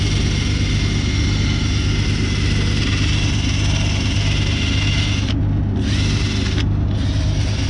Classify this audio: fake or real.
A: real